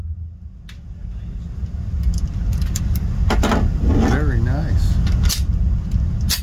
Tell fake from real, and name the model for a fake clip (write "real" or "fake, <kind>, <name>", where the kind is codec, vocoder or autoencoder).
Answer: real